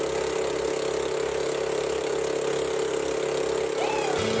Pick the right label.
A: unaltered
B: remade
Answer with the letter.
A